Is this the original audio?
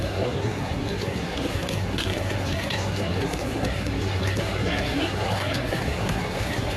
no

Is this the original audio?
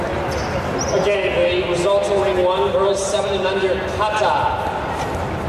yes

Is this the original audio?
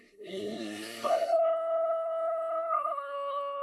no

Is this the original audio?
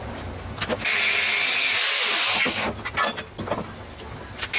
yes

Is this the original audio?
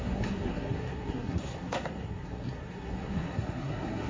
no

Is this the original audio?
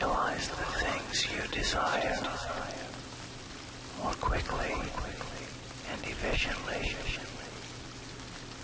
yes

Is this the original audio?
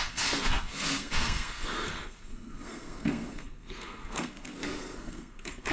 no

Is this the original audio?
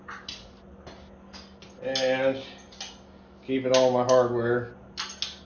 yes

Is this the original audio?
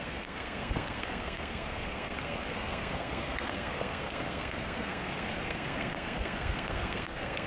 no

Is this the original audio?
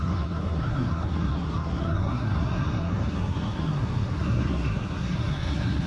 no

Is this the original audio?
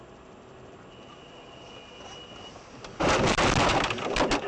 yes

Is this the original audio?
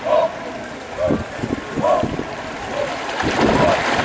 yes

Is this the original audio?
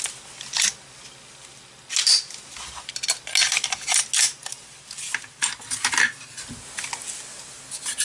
yes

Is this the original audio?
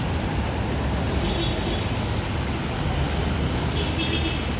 yes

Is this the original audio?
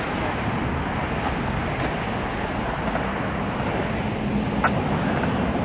yes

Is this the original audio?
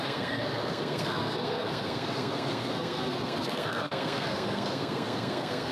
no